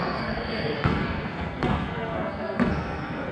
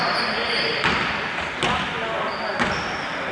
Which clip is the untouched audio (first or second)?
second